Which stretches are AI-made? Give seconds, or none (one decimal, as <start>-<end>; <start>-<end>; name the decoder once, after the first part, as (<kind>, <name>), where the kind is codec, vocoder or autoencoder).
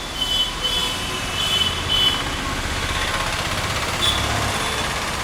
none